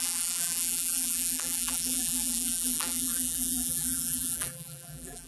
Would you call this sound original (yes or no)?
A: no